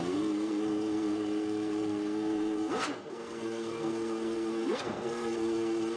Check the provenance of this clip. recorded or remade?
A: remade